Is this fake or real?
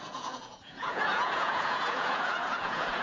fake